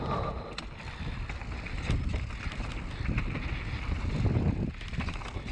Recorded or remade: recorded